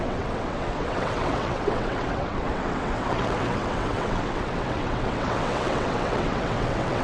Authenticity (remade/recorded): remade